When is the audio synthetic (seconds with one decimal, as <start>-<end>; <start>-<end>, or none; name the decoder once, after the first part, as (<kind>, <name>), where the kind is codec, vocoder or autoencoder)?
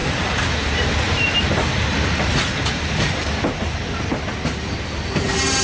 0.0-0.9 (vocoder, BigVGAN v2)